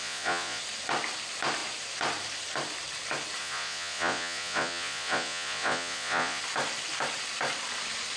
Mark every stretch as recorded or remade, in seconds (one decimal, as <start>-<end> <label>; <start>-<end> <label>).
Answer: 0.0-0.6 remade; 0.6-3.4 recorded; 3.4-6.4 remade; 6.4-8.2 recorded

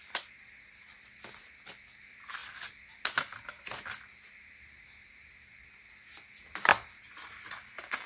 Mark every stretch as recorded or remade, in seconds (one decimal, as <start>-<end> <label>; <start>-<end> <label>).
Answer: 0.0-8.1 recorded

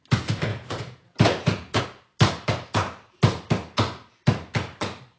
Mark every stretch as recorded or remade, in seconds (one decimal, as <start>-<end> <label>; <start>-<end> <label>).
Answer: 0.0-0.5 recorded; 0.5-1.8 remade; 1.8-5.2 recorded

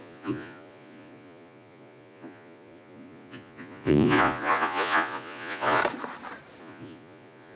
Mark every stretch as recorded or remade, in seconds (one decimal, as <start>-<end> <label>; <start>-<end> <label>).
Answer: 0.0-5.8 remade; 5.8-6.6 recorded; 6.6-7.6 remade

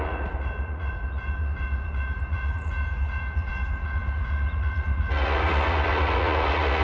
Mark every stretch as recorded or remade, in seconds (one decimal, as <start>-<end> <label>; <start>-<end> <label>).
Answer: 0.0-6.8 remade

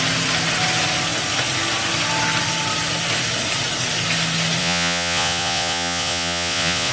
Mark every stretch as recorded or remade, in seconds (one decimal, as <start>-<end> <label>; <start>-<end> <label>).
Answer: 0.0-4.6 recorded; 4.6-6.9 remade